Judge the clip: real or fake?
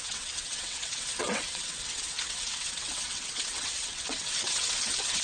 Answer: fake